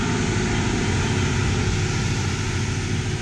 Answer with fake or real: real